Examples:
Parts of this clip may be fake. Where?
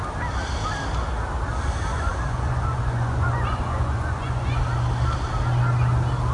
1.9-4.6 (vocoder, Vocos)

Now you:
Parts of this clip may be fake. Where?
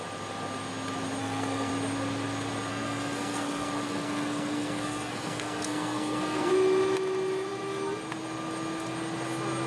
1.2-1.7 (codec, SNAC); 2.7-6.5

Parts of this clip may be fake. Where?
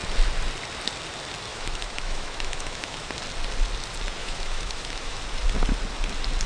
1.5-3.1 (autoencoder, DAC-VAE); 4.2-5.2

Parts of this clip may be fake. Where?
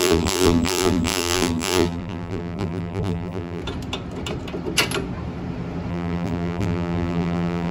0.0-3.6 (vocoder, BigVGAN v2); 5.9-7.7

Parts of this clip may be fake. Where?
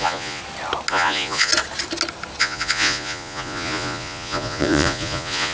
0.0-0.4 (vocoder, Vocos); 0.9-1.5; 2.4-5.5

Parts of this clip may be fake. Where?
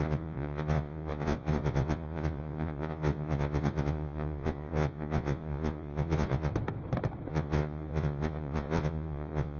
0.0-6.5 (vocoder, Vocos); 7.3-9.6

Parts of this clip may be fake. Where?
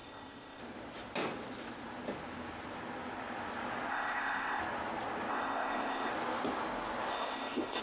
0.0-0.6 (codec, ZipCodec); 3.9-4.6; 5.3-6.1; 7.1-7.8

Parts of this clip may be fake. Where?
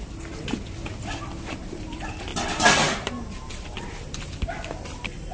none